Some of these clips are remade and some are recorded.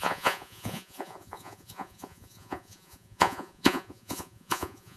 remade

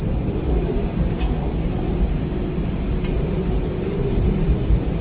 recorded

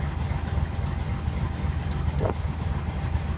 recorded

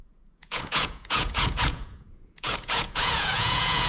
remade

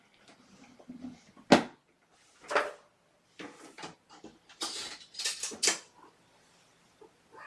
recorded